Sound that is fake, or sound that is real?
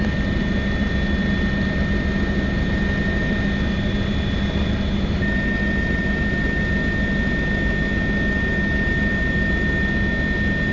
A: real